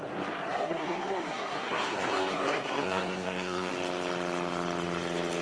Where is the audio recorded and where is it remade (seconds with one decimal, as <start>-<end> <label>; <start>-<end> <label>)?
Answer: 0.0-0.5 recorded; 0.5-3.7 remade; 3.7-5.4 recorded